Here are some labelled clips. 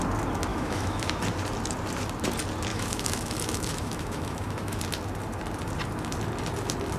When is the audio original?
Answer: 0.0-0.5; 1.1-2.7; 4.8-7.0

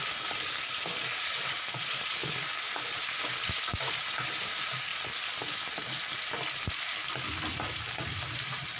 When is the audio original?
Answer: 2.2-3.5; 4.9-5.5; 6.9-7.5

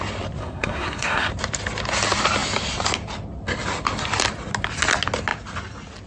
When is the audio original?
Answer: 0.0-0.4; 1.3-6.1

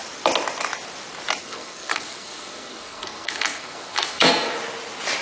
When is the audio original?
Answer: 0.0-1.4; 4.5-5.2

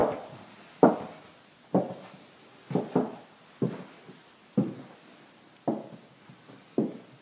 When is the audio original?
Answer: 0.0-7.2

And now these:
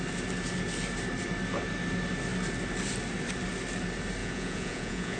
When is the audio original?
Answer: 0.0-4.2